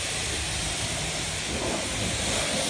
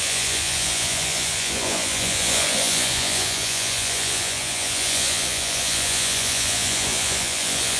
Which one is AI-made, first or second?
second